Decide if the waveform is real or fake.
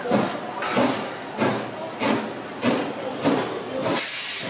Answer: fake